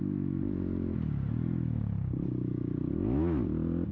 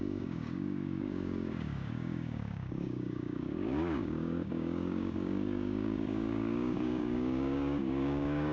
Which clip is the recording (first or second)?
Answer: first